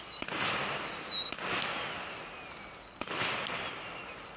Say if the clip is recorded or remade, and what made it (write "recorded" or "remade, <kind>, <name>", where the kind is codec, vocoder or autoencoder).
recorded